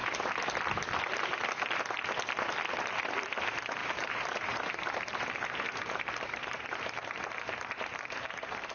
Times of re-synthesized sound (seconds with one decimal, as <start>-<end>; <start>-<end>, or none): 3.8-8.7